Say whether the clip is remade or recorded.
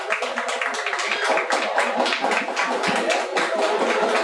recorded